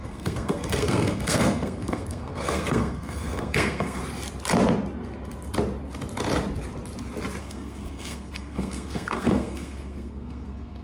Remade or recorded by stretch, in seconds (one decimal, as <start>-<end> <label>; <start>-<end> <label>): 0.0-4.0 remade; 4.0-7.4 recorded; 7.4-10.8 remade